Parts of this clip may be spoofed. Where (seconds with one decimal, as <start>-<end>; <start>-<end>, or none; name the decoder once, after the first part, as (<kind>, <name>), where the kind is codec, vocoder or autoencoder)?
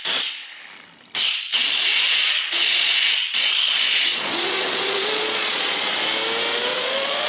1.5-5.9 (vocoder, Vocos); 6.7-7.3